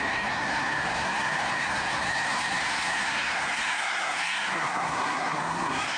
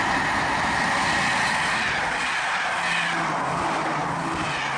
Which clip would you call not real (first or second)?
first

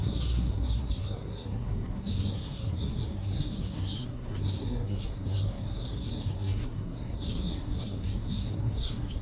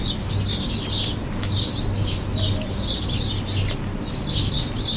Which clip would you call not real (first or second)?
first